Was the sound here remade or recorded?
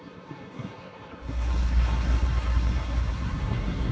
remade